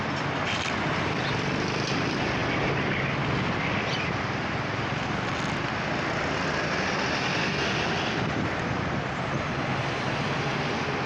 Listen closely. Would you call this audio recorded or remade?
recorded